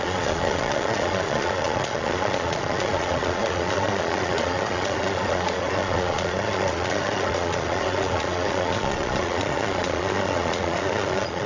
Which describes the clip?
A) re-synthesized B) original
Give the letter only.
A